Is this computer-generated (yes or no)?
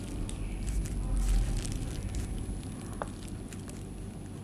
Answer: no